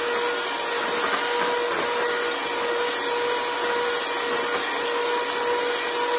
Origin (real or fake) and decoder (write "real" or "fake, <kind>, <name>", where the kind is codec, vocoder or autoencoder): real